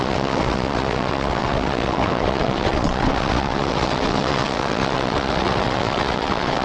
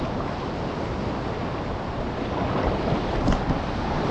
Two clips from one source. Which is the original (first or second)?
second